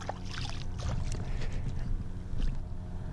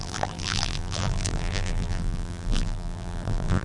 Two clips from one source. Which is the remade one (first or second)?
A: second